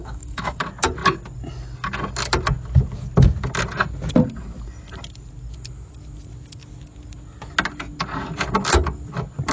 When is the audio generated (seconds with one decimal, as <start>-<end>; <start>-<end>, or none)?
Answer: 0.0-0.6